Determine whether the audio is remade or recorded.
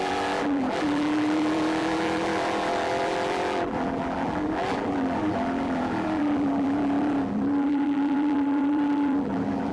remade